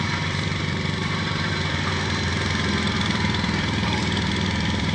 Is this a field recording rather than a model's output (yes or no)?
no